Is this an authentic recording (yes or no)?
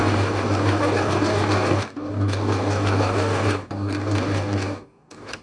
no